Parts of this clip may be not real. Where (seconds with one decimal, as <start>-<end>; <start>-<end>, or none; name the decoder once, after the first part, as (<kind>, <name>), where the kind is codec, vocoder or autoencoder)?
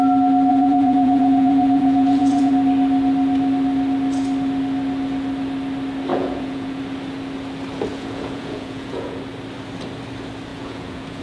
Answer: 0.5-2.5 (vocoder, Vocos); 6.1-6.8; 7.9-9.2; 10.5-11.2